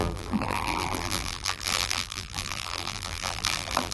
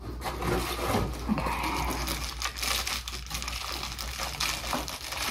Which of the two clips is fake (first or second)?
first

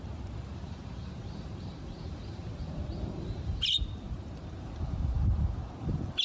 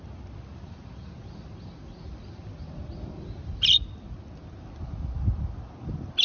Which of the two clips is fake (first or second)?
first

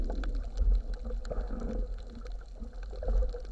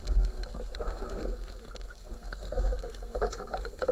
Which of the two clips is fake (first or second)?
second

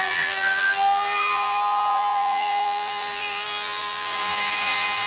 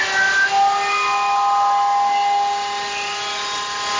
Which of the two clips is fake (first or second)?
first